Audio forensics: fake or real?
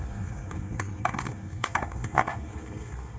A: fake